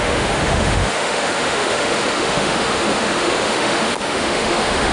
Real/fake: fake